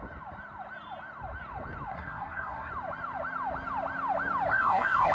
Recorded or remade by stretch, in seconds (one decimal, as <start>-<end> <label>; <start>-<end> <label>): 0.0-1.9 recorded; 1.9-2.7 remade; 2.7-4.5 recorded; 4.5-5.1 remade